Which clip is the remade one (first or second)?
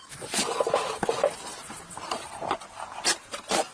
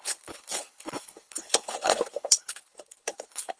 second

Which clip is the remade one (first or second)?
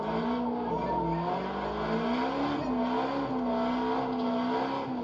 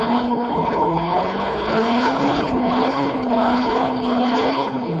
second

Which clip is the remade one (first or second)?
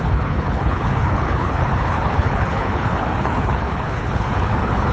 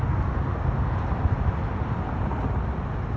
first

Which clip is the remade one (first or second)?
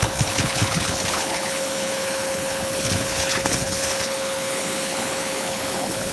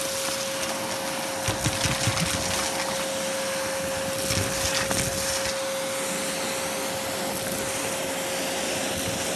first